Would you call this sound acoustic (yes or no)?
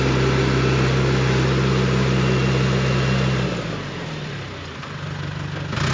yes